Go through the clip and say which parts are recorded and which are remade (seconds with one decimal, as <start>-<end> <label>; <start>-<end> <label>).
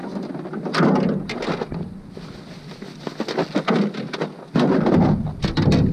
0.0-5.9 recorded